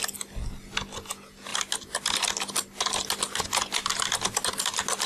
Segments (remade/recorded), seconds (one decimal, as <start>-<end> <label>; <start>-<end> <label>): 0.0-5.1 recorded